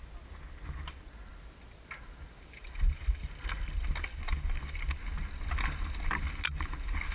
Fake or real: real